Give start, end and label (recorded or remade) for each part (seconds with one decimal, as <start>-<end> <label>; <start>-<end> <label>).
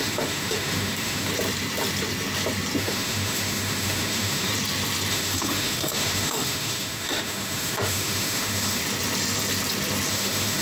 0.0-1.3 remade; 1.3-2.8 recorded; 2.8-4.5 remade; 4.5-5.1 recorded; 5.1-8.8 remade; 8.8-10.1 recorded; 10.1-10.6 remade